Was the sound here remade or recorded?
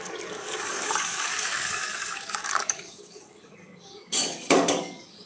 remade